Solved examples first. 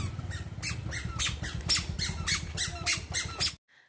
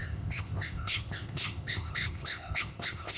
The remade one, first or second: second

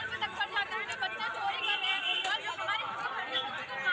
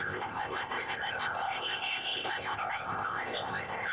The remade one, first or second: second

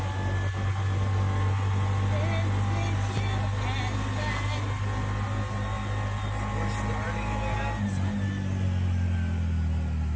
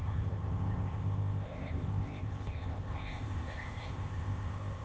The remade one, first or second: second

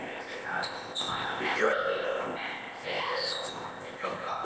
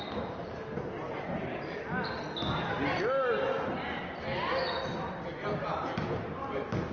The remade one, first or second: first